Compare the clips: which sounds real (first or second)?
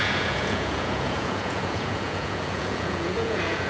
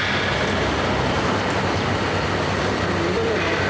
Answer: second